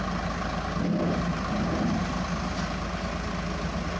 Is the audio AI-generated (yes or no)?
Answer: no